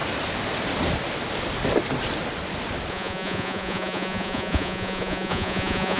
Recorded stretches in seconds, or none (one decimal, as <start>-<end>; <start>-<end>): 0.0-2.9